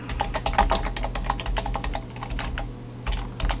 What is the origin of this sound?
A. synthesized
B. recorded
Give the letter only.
B